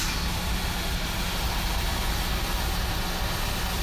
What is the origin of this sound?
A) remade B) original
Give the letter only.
B